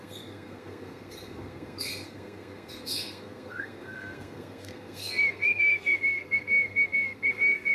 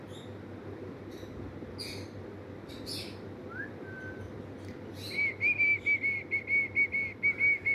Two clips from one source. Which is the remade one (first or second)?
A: first